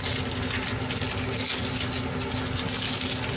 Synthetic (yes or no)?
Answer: no